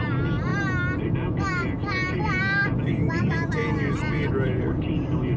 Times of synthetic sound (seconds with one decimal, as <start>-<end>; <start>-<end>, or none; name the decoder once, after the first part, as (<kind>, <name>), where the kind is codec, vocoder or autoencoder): none